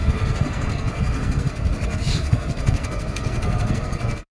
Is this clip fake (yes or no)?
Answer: yes